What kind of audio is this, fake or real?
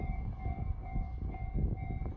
fake